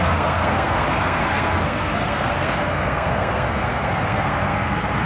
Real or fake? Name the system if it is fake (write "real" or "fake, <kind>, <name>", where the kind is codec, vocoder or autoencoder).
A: fake, codec, SNAC